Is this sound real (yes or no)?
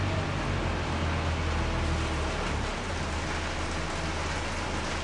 yes